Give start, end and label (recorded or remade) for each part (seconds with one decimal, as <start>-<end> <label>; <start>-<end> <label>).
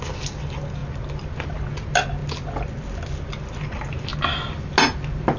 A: 0.0-5.4 recorded